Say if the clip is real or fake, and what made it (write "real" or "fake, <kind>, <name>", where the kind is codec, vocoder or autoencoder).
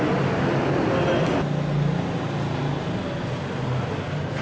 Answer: real